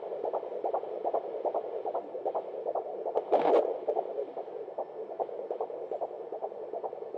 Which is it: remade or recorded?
recorded